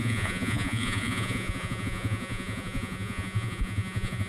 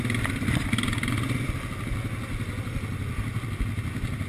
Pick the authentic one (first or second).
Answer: second